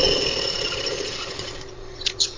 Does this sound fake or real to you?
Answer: fake